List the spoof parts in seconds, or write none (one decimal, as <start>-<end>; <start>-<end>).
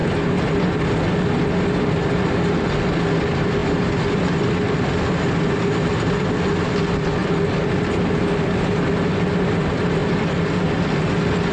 3.6-5.9; 7.2-7.9; 10.0-10.6